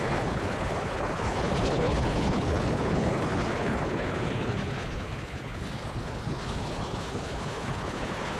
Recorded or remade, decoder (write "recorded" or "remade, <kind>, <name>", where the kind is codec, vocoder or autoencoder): remade, codec, HILCodec